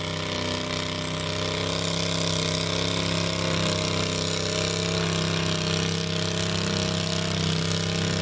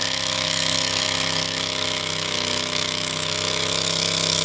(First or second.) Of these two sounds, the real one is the first